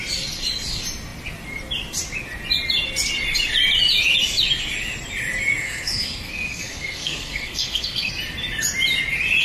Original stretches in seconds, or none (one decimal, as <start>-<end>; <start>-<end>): 0.0-5.6; 8.1-9.4

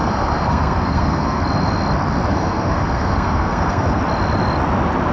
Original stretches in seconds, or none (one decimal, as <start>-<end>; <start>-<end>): 1.4-2.3; 4.0-5.1